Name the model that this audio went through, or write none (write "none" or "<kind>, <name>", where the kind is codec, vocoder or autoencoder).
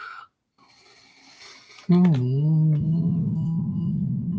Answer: none